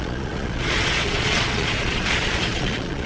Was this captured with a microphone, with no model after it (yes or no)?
no